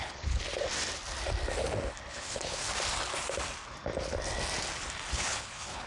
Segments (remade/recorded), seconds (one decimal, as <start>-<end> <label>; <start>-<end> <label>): 0.0-0.4 remade; 0.4-2.1 recorded; 2.1-2.6 remade; 2.6-5.1 recorded; 5.1-5.9 remade